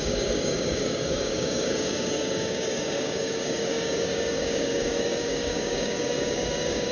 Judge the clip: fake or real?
fake